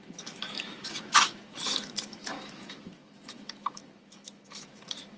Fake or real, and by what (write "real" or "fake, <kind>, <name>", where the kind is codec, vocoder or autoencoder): fake, autoencoder, DAC-VAE